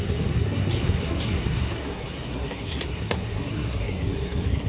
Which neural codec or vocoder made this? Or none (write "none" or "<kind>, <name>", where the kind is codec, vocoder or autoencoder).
codec, SNAC